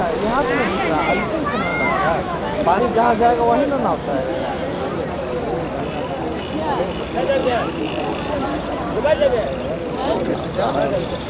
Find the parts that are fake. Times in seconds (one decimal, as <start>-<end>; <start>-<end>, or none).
1.7-2.8; 7.4-7.9